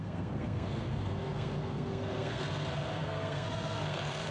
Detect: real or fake fake